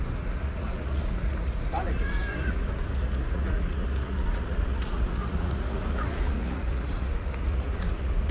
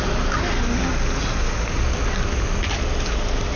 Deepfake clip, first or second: first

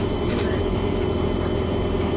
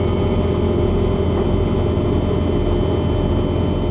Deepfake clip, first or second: first